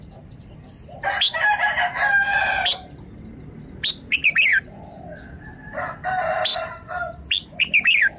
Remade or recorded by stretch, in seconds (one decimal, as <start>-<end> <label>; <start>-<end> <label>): 0.0-8.2 recorded